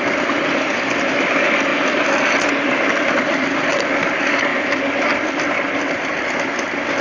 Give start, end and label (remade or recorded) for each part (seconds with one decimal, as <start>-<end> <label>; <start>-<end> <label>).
0.0-1.7 remade; 1.7-3.1 recorded; 3.1-4.5 remade; 4.5-6.2 recorded; 6.2-7.0 remade